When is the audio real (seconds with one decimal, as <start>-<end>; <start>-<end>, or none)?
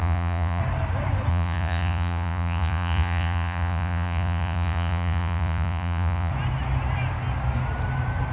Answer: 0.6-1.3; 6.3-8.3